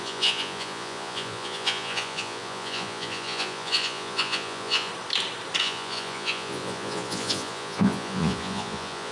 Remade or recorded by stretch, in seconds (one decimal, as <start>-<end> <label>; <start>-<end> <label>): 0.0-4.9 remade; 4.9-5.6 recorded; 5.6-9.1 remade

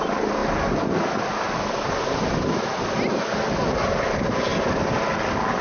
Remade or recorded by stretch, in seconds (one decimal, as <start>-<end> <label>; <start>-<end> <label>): 0.0-5.6 recorded

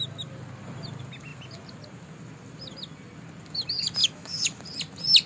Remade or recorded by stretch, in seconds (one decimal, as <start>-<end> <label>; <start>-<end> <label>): 0.0-4.0 recorded; 4.0-4.6 remade; 4.6-5.3 recorded

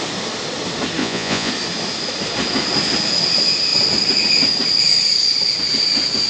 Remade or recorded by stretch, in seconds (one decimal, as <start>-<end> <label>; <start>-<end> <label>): 0.0-1.0 recorded; 1.0-1.5 remade; 1.5-6.3 recorded

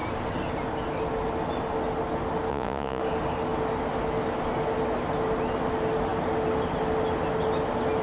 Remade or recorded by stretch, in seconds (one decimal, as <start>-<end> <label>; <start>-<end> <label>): 0.0-2.5 recorded; 2.5-3.0 remade; 3.0-8.0 recorded

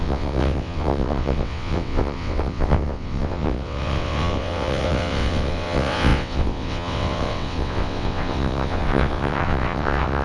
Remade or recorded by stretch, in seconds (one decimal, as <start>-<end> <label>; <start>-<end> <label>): 0.0-10.2 remade

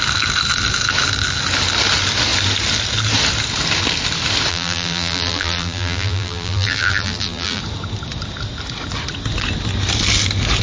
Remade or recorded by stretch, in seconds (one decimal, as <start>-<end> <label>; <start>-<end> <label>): 0.0-4.5 recorded; 4.5-7.6 remade; 7.6-10.6 recorded